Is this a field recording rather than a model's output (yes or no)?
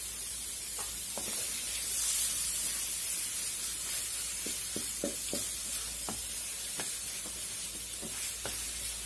yes